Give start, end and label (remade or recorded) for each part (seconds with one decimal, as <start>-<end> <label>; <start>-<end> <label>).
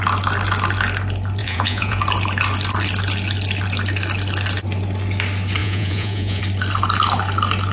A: 0.0-1.4 recorded; 1.4-2.0 remade; 2.0-5.6 recorded; 5.6-6.4 remade; 6.4-7.7 recorded